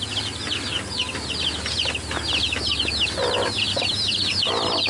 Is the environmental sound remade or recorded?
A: recorded